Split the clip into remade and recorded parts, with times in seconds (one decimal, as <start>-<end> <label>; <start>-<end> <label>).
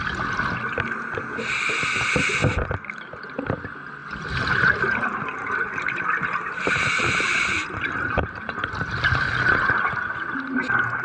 0.0-11.0 recorded